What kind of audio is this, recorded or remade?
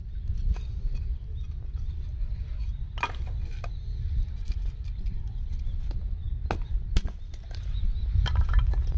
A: recorded